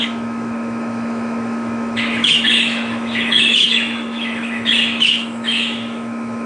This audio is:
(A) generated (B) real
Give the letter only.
A